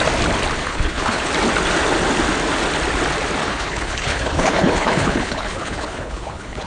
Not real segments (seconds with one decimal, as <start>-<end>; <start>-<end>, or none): 0.6-1.3; 3.4-6.7